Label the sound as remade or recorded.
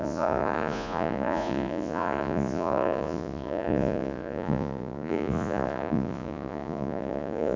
remade